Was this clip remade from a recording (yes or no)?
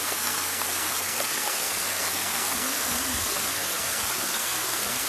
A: yes